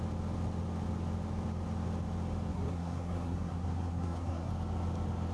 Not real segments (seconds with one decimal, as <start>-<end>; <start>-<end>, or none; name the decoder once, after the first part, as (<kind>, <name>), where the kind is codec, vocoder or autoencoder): 2.5-4.5 (codec, SNAC)